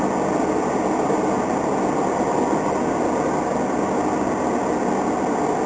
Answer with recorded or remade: recorded